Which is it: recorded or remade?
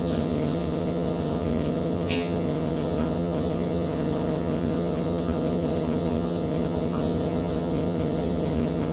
remade